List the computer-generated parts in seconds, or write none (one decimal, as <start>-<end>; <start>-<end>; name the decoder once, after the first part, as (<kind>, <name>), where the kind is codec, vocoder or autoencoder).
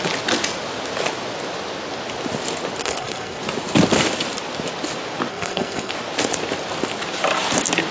2.8-3.4 (codec, SNAC); 5.3-5.9